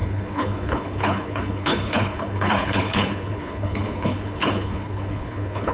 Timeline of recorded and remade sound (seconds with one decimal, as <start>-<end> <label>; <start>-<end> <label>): 0.0-5.7 remade